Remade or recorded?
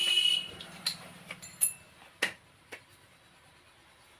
remade